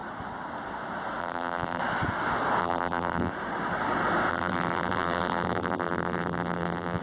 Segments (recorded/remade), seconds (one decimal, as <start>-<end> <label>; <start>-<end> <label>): 0.0-1.2 recorded; 1.2-1.8 remade; 1.8-2.6 recorded; 2.6-3.3 remade; 3.3-4.3 recorded; 4.3-7.0 remade